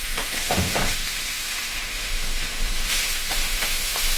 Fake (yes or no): yes